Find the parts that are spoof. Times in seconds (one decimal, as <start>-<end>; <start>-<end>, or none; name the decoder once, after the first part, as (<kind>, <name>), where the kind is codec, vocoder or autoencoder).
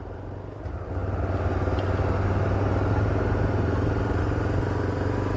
none